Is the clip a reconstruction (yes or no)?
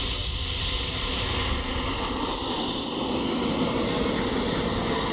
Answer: no